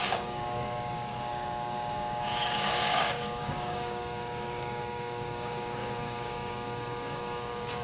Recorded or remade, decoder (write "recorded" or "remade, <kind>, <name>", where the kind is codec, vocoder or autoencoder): remade, codec, DAC